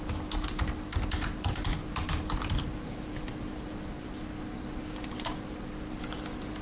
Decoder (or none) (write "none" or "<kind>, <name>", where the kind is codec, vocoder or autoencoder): none